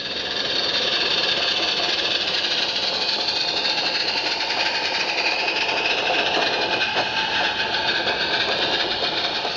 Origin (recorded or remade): recorded